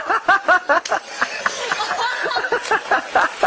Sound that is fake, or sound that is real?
real